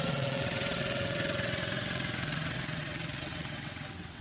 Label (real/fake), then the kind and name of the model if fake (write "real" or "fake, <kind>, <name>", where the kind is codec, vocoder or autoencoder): fake, vocoder, WaveNeXt